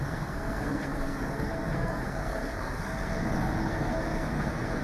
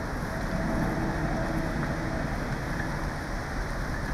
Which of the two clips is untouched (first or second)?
second